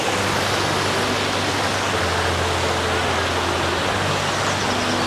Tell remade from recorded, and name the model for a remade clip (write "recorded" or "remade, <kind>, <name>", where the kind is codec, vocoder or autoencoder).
recorded